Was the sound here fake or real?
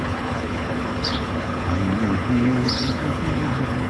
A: fake